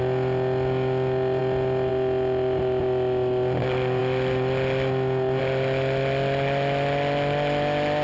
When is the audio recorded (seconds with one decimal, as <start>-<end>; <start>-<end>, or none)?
0.0-8.0